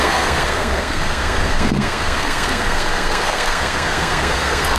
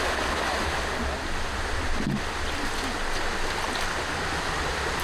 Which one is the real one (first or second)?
second